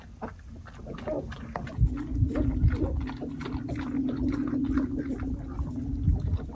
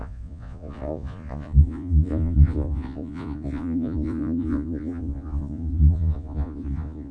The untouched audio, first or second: first